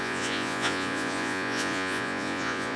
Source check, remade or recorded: remade